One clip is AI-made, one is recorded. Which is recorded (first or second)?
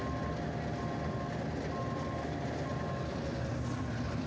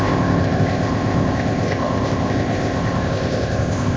first